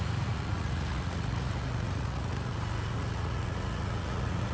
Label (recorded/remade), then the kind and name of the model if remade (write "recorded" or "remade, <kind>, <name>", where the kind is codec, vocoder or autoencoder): remade, vocoder, Vocos